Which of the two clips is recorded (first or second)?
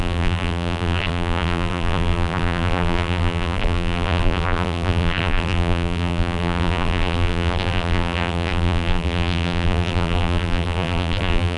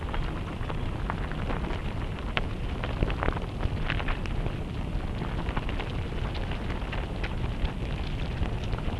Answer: second